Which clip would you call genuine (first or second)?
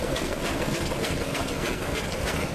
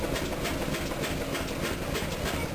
second